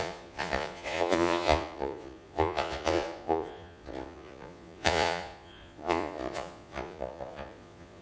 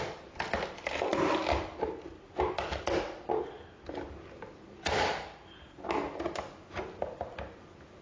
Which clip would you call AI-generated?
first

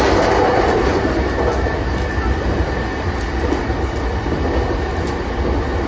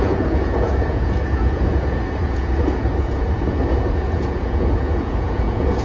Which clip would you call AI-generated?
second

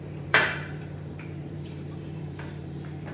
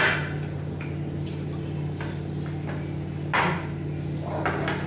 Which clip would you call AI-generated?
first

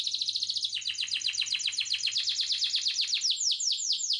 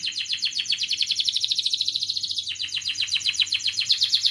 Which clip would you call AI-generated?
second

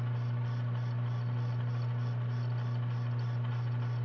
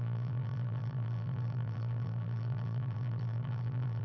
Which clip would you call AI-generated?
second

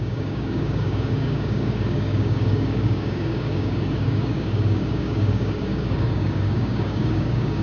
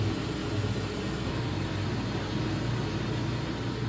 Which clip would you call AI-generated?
first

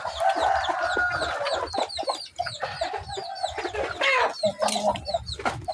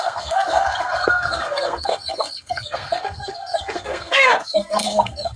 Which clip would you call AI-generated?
second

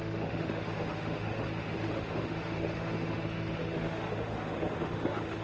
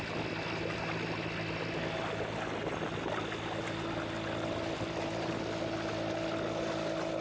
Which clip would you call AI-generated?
first